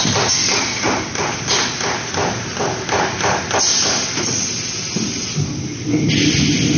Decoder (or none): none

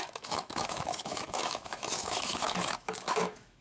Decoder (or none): autoencoder, DAC-VAE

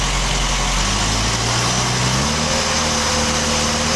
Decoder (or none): none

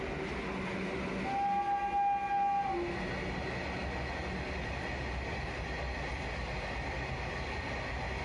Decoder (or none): none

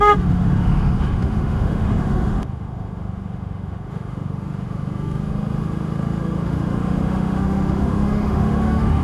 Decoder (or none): autoencoder, DAC-VAE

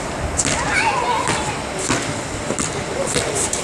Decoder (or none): none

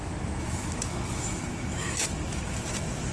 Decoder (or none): autoencoder, DAC-VAE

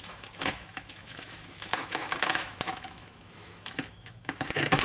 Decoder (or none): autoencoder, DAC-VAE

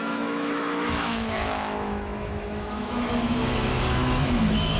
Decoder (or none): autoencoder, DAC-VAE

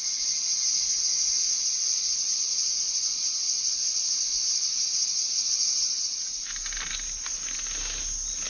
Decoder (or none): none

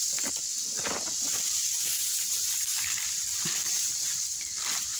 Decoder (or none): none